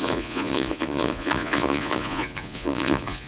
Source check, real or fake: fake